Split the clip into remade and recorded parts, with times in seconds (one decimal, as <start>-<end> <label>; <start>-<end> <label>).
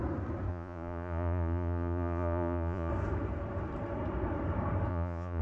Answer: 0.0-0.5 recorded; 0.5-2.9 remade; 2.9-4.9 recorded; 4.9-5.4 remade